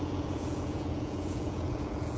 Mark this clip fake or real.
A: fake